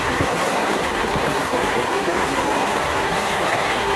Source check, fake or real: fake